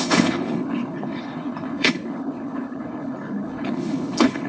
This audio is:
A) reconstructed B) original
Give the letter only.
A